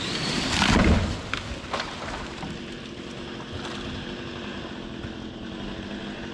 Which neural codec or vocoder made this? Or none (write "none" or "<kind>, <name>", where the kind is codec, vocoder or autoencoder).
none